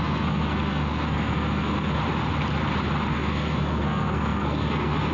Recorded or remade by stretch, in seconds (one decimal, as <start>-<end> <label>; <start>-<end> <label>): 0.0-2.0 remade; 2.0-3.1 recorded; 3.1-5.1 remade